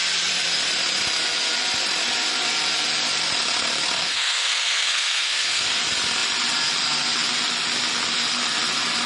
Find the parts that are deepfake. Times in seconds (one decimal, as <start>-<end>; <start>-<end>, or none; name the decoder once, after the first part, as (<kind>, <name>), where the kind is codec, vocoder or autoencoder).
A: 4.0-5.8 (codec, SNAC)